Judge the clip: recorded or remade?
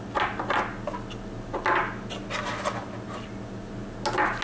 recorded